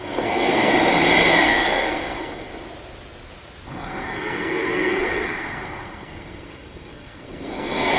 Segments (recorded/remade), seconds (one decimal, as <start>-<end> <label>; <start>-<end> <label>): 0.0-0.7 remade; 0.7-1.4 recorded; 1.4-2.5 remade; 2.5-3.7 recorded; 3.7-8.0 remade